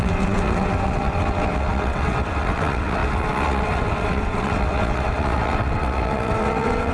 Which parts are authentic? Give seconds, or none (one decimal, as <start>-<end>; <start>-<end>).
none